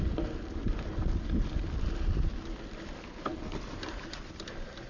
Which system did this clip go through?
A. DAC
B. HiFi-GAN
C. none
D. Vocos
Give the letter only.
C